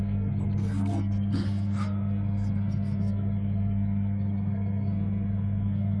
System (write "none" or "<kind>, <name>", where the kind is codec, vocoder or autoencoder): codec, SNAC